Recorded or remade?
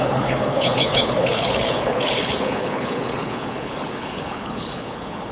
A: remade